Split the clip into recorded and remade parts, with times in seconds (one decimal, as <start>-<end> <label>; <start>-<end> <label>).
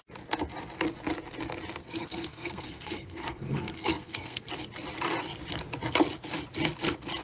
0.0-1.8 recorded; 1.8-4.5 remade; 4.5-7.2 recorded